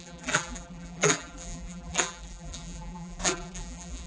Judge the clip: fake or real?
fake